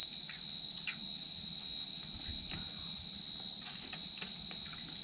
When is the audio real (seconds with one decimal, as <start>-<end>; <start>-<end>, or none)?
0.0-5.0